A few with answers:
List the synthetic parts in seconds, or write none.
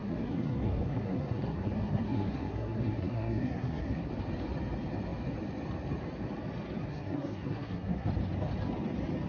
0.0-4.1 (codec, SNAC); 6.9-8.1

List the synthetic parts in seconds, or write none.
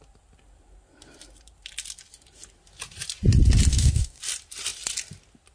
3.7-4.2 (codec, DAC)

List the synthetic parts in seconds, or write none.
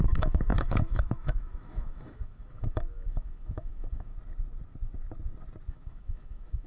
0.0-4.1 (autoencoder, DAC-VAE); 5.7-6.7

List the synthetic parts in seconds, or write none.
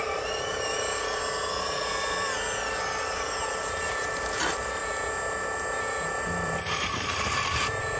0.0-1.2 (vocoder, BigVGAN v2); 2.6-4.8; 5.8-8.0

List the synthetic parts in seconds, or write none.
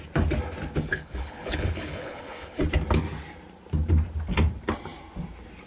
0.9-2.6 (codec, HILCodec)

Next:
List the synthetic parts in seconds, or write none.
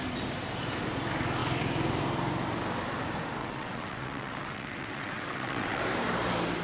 3.4-5.8 (vocoder, WaveNeXt)